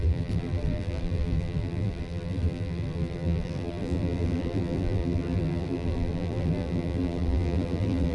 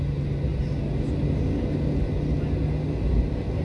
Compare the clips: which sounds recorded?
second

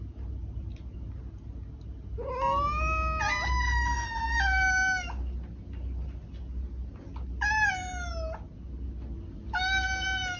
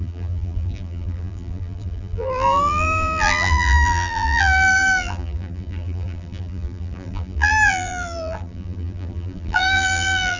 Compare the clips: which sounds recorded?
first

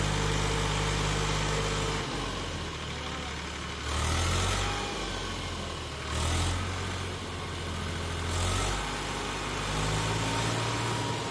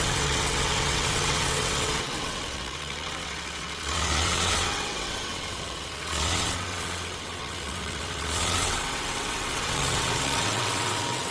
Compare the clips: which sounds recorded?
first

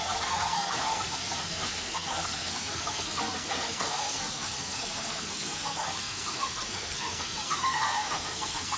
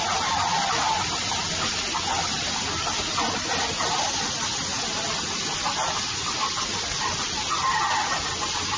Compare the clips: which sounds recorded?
second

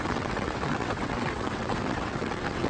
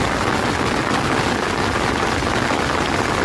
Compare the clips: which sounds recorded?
second